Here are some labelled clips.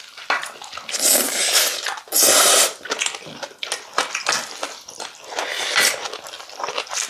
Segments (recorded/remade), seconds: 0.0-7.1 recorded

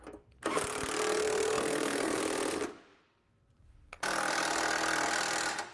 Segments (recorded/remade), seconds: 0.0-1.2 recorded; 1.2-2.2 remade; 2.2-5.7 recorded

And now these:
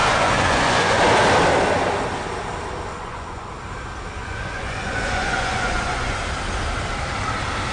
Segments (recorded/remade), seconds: 0.0-1.0 remade; 1.0-2.9 recorded; 2.9-3.5 remade; 3.5-4.2 recorded; 4.2-6.2 remade; 6.2-7.7 recorded

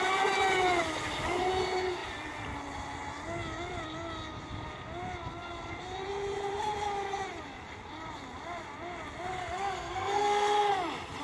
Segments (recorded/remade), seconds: 0.0-9.3 recorded; 9.3-10.7 remade; 10.7-11.2 recorded

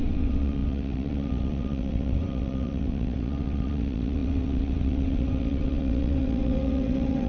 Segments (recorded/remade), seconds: 0.0-7.3 remade

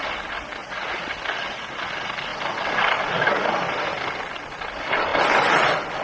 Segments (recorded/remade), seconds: 0.0-0.6 recorded; 0.6-1.1 remade; 1.1-6.0 recorded